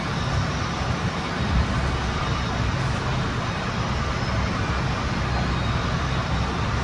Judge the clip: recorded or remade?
recorded